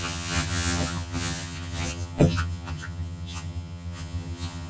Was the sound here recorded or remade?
remade